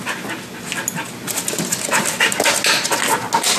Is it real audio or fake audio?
real